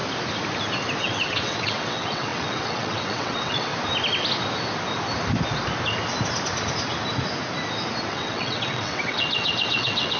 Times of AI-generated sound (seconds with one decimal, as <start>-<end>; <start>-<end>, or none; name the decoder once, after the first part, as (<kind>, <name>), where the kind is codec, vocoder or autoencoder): 1.0-3.7 (vocoder, WaveNeXt); 8.1-10.2

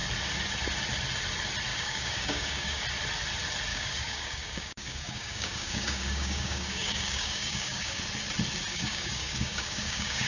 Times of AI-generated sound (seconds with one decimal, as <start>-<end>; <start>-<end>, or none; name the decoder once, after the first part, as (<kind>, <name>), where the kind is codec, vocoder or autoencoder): 1.7-2.8 (codec, DAC); 3.7-8.0; 8.7-10.3

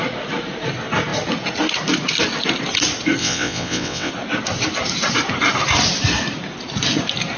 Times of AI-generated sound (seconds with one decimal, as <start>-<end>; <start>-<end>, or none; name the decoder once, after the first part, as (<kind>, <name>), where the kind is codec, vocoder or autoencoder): 3.2-4.1 (vocoder, WaveNeXt)

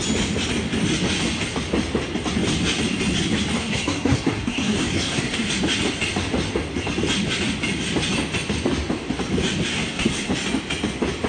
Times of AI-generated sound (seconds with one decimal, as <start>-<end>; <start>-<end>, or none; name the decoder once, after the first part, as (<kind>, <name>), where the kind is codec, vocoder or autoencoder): 3.6-5.5 (codec, SNAC); 9.7-10.3

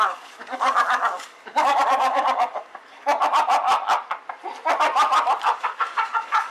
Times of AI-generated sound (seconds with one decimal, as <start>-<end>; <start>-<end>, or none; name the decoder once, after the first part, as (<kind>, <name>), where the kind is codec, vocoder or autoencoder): 0.0-3.1 (codec, DAC); 5.4-6.5

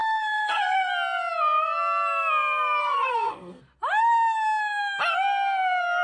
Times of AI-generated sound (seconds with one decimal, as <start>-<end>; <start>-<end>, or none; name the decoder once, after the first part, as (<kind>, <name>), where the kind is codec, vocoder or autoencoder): 0.0-0.9 (codec, SNAC); 2.8-3.6

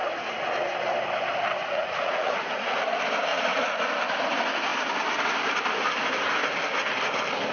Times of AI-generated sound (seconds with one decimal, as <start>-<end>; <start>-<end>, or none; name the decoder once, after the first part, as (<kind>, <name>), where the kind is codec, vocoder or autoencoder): 1.6-2.8 (vocoder, Vocos); 3.3-3.8

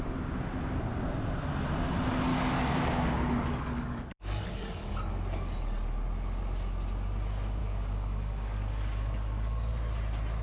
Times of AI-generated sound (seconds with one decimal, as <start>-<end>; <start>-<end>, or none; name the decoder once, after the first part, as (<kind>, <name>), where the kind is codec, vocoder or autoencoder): 2.3-4.9 (codec, DAC); 7.6-9.7